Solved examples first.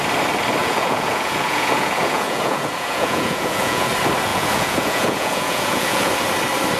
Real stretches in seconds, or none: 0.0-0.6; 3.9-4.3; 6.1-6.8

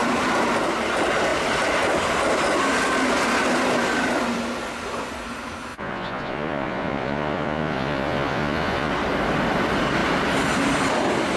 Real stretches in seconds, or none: 0.0-5.7; 8.9-11.4

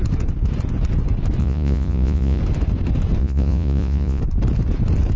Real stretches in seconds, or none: 0.0-1.4; 2.4-3.2; 4.2-5.2

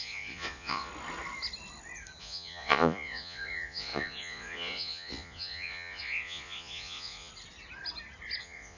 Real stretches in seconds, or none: 0.9-2.2; 7.3-8.4

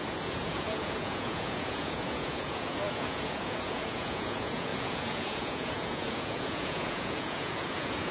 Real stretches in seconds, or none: none

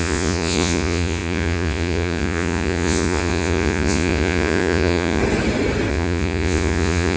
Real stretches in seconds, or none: 5.2-5.9

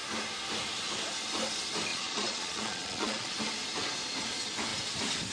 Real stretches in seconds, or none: 0.0-1.9; 3.4-5.3

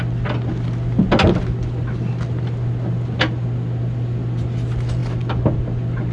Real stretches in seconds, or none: 0.0-6.1